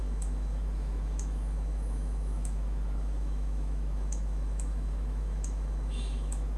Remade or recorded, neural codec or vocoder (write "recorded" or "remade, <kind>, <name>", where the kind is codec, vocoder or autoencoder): remade, autoencoder, DAC-VAE